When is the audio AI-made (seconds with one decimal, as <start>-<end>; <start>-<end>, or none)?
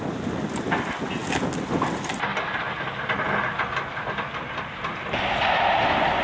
1.2-1.8